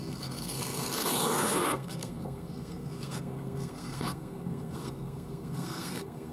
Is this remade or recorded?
remade